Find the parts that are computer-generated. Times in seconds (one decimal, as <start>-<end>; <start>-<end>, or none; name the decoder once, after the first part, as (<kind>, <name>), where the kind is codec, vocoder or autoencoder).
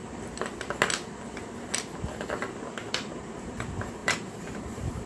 2.9-5.1 (vocoder, BigVGAN v2)